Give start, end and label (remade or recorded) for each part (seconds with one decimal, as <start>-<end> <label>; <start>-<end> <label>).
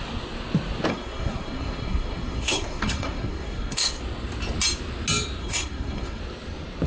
0.0-0.9 recorded; 0.9-4.0 remade; 4.0-5.4 recorded; 5.4-6.2 remade; 6.2-6.9 recorded